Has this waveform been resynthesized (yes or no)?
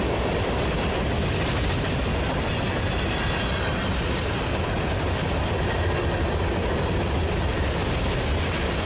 no